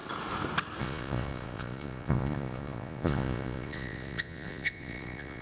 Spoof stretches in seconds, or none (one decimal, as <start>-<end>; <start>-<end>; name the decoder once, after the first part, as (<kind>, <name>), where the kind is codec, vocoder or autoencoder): 0.8-5.4 (vocoder, Vocos)